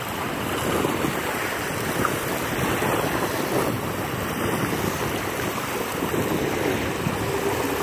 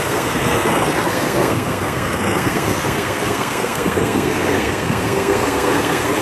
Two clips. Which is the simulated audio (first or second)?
second